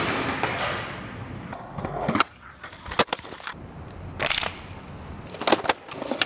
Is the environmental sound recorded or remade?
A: recorded